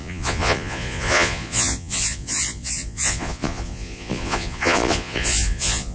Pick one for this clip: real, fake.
fake